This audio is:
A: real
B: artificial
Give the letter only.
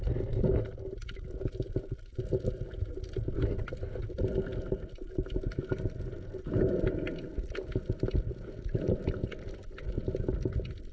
A